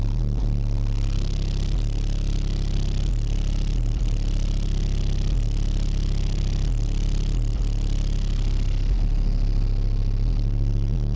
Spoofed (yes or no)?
no